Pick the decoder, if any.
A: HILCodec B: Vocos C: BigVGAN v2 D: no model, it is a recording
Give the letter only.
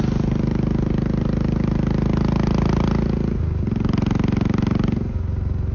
D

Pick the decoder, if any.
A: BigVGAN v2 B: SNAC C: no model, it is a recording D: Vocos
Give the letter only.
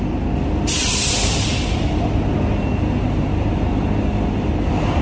C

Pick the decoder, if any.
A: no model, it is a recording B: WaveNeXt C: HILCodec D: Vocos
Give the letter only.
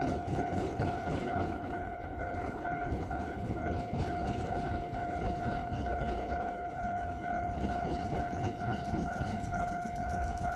C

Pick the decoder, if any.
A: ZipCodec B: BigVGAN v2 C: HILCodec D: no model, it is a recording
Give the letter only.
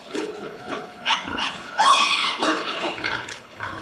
C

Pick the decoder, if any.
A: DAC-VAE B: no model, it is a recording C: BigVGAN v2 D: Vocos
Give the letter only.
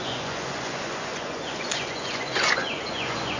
D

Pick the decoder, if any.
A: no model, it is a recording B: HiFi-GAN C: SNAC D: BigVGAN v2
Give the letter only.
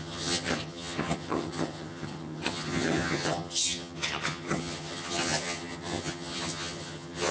B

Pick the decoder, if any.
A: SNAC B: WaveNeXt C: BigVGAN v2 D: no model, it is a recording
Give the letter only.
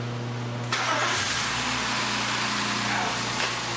D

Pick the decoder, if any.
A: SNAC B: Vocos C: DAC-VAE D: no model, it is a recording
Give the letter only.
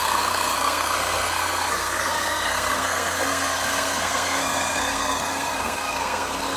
A